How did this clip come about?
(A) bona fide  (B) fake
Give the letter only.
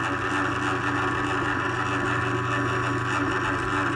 A